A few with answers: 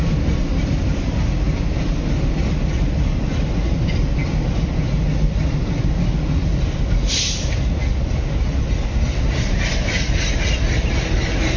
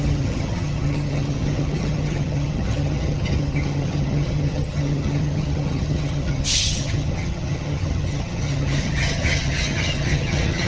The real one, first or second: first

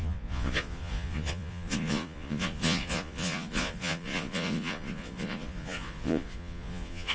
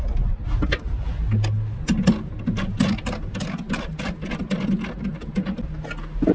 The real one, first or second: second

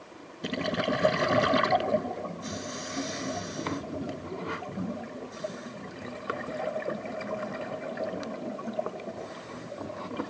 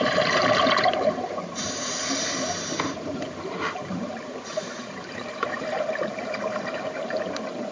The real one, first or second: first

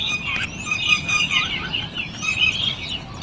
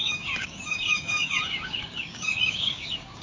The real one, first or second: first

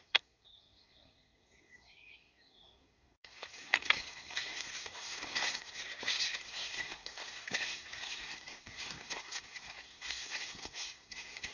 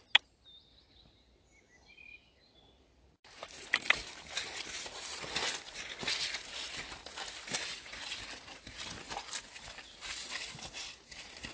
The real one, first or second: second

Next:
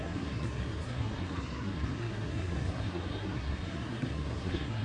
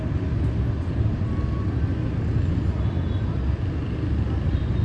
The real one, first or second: second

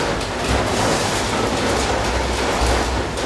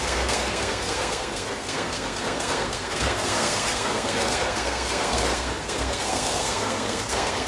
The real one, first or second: first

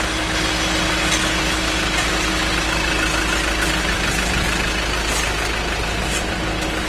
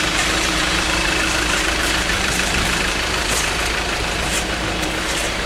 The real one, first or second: first